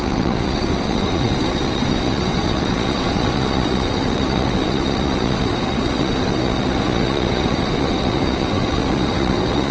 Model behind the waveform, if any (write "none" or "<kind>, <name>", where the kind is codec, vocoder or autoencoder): vocoder, WaveNeXt